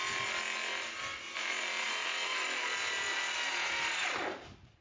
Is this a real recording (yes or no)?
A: yes